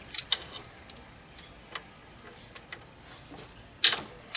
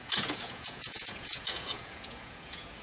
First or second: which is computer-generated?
second